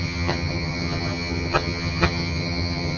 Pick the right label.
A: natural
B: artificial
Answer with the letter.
B